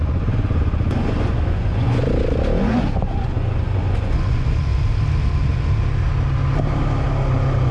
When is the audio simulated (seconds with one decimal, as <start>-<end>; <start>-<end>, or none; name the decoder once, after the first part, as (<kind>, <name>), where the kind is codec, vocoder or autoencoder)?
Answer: 0.0-2.0 (vocoder, Vocos); 2.6-4.7